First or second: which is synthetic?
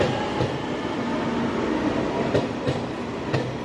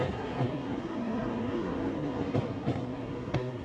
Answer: second